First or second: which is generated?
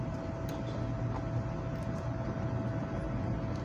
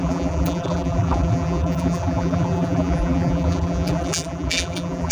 second